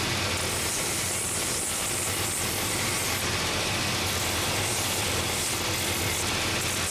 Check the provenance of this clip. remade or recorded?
recorded